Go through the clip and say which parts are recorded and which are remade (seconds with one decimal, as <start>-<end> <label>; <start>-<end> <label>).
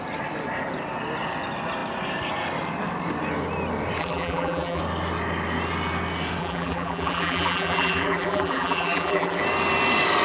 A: 0.0-4.0 recorded; 4.0-4.8 remade; 4.8-6.4 recorded; 6.4-9.4 remade; 9.4-10.2 recorded